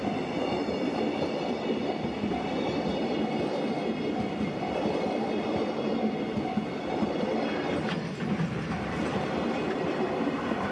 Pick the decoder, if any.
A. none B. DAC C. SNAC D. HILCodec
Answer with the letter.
A